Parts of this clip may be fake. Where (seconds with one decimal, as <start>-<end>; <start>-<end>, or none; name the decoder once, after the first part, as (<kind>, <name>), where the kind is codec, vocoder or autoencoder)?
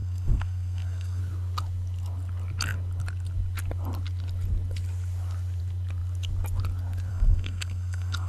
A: 0.0-1.2 (codec, SNAC); 7.1-8.3